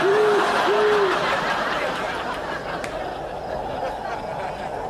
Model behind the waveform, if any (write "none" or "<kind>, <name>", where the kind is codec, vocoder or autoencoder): none